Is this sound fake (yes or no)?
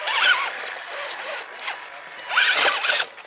no